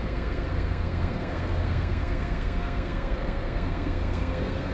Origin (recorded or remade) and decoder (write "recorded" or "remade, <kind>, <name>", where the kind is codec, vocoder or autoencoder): remade, codec, SNAC